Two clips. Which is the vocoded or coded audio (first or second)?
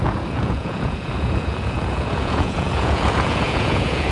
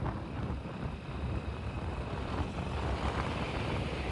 first